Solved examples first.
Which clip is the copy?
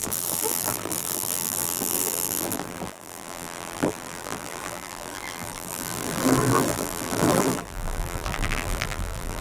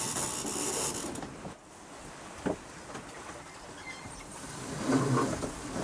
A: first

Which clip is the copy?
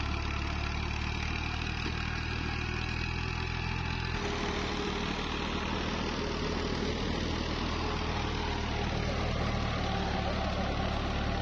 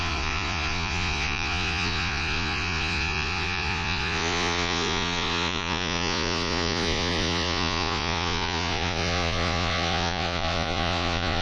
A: second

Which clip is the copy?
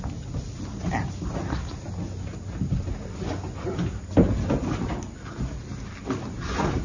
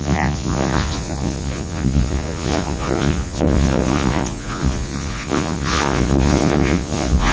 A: second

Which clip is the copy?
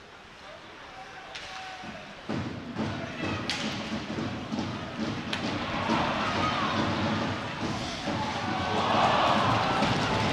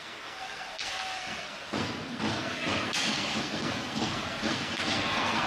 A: second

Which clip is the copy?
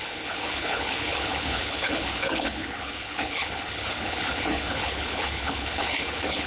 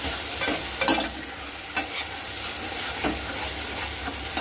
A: first